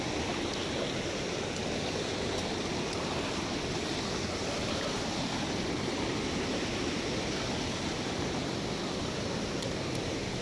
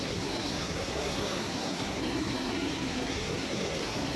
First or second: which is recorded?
first